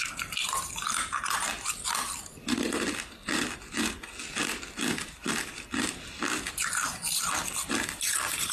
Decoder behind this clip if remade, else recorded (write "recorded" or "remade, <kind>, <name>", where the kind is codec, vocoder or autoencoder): recorded